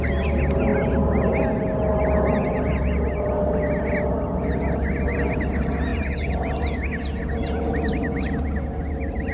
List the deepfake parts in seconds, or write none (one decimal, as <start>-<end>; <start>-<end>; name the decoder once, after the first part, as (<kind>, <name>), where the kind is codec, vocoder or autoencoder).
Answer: 5.9-6.5 (vocoder, Vocos)